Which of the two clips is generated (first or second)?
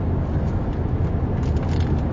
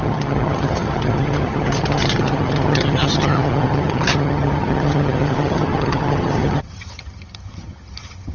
second